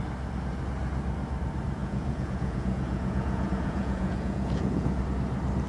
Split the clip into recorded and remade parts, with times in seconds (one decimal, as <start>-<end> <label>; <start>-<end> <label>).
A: 0.0-1.8 recorded; 1.8-5.0 remade; 5.0-5.7 recorded